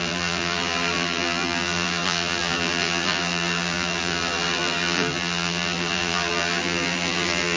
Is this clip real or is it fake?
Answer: fake